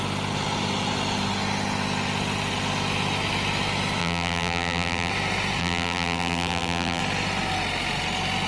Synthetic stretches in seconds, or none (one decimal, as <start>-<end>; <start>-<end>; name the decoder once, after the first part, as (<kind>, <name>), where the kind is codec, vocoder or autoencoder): 4.0-5.1 (vocoder, BigVGAN v2); 5.6-7.0

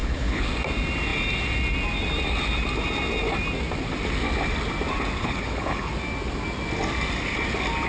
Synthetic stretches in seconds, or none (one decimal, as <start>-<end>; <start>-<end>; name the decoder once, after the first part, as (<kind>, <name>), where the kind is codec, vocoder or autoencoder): 0.0-0.5 (codec, HILCodec); 5.2-5.9

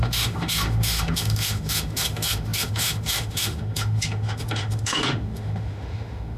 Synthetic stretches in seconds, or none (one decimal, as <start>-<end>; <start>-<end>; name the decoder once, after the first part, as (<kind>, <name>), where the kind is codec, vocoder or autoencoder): 0.0-6.4 (autoencoder, DAC-VAE)

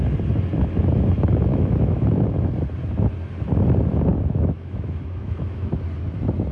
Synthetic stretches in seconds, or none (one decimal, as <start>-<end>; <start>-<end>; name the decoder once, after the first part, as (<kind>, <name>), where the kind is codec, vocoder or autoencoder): 1.5-2.5 (autoencoder, DAC-VAE); 4.1-5.7